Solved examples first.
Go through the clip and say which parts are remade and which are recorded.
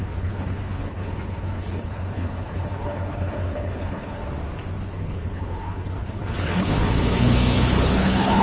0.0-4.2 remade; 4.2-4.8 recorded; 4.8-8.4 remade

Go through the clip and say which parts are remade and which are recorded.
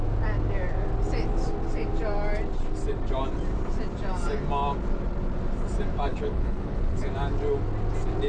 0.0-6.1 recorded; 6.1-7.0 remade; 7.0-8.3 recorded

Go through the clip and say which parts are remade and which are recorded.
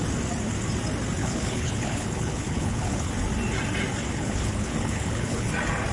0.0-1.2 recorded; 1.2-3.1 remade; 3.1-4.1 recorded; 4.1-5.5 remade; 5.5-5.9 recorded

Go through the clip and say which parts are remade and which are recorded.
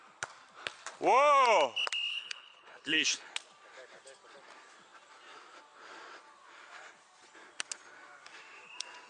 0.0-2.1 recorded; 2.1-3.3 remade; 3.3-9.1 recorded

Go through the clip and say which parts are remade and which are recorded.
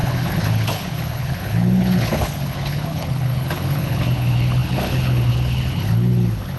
0.0-6.6 remade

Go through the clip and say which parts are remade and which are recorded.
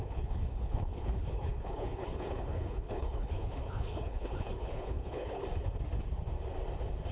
0.0-5.4 remade; 5.4-7.1 recorded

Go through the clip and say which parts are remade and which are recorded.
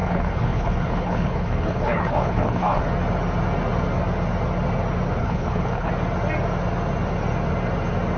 0.0-2.8 remade; 2.8-5.2 recorded; 5.2-5.9 remade; 5.9-8.2 recorded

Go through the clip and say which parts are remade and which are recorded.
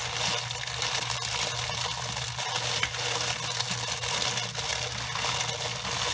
0.0-6.1 recorded